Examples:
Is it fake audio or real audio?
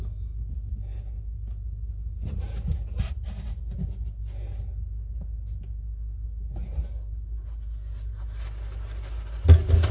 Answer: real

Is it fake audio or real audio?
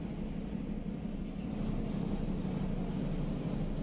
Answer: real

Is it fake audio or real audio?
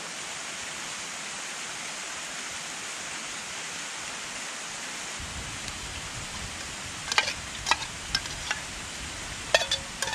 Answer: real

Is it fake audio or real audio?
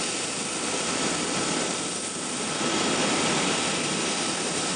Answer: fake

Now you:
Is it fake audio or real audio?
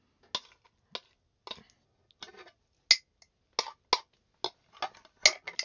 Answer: real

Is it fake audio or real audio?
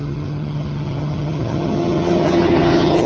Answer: fake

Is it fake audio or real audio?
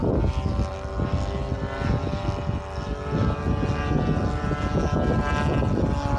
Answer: real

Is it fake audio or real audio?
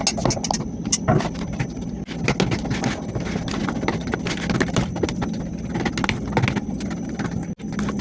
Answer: real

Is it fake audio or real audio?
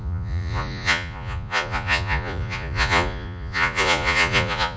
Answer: fake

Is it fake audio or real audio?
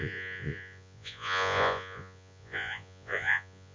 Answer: fake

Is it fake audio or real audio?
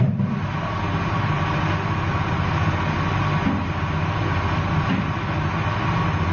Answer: real